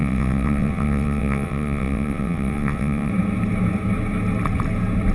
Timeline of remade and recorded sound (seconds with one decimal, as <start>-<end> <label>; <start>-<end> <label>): 0.0-3.1 remade; 3.1-5.1 recorded